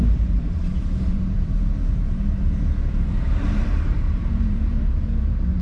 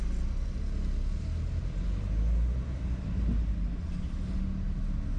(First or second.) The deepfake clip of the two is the first